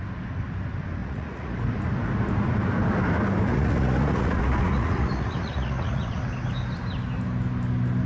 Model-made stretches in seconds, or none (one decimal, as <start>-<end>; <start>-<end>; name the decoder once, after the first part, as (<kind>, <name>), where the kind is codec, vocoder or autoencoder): 1.0-1.6 (vocoder, Vocos); 3.5-6.2